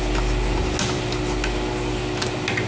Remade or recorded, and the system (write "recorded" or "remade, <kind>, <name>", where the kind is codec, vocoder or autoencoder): recorded